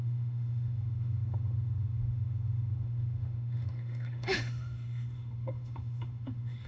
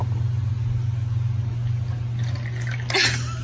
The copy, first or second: first